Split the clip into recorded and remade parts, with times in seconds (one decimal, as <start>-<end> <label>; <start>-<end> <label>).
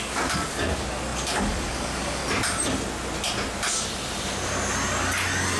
0.0-2.2 remade; 2.2-5.6 recorded